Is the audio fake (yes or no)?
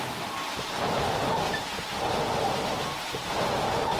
no